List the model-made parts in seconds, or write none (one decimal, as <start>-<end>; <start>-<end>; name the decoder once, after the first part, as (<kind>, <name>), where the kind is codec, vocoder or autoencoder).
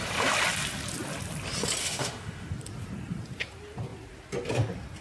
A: 1.8-2.5 (autoencoder, DAC-VAE)